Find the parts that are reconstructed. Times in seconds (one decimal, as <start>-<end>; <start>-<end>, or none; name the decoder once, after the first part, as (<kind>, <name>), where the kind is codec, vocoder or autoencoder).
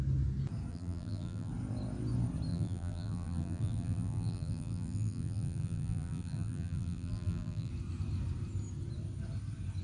0.7-1.5 (vocoder, BigVGAN v2); 2.5-7.7